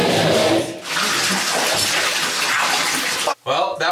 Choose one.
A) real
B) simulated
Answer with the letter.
A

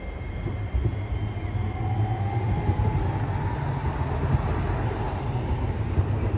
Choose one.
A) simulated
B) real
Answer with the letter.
B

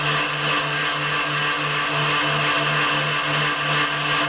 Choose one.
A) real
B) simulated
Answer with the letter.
A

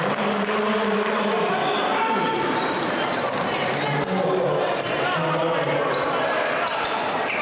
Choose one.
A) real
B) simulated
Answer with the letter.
B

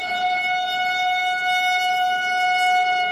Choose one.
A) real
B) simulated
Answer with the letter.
A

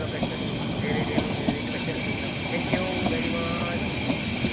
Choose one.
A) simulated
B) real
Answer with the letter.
B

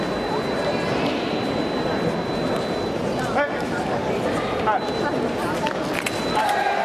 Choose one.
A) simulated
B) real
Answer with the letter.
B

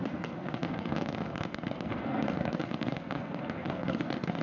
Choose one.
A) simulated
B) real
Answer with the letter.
A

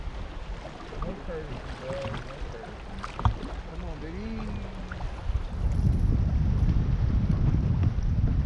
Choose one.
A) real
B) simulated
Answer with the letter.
A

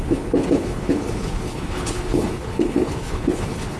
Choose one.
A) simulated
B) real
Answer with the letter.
A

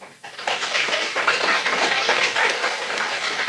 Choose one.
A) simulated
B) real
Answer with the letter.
A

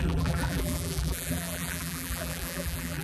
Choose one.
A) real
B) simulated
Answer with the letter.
B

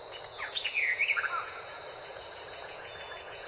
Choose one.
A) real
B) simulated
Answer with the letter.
B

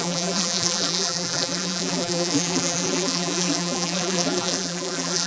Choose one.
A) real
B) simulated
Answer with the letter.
B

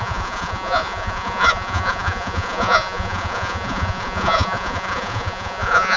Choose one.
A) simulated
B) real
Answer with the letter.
A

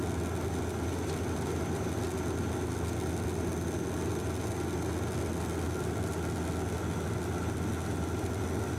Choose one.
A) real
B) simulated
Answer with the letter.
A